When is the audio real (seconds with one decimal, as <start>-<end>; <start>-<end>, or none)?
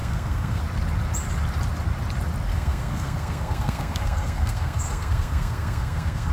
0.6-2.5